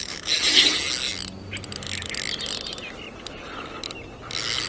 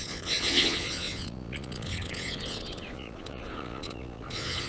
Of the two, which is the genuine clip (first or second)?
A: first